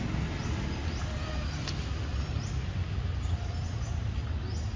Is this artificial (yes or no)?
no